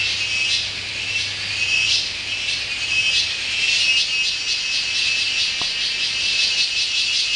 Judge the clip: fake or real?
real